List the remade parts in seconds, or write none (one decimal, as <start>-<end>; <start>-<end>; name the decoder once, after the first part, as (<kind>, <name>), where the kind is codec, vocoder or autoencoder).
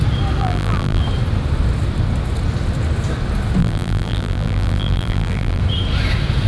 0.4-1.0 (vocoder, BigVGAN v2); 3.6-5.6